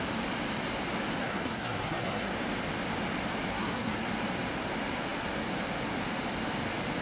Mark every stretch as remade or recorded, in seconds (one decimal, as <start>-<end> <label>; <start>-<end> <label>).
0.0-1.2 recorded; 1.2-2.3 remade; 2.3-3.5 recorded; 3.5-4.1 remade; 4.1-7.0 recorded